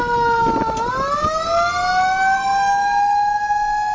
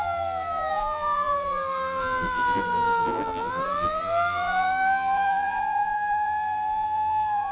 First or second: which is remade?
second